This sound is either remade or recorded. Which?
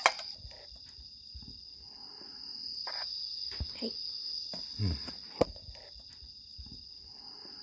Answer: recorded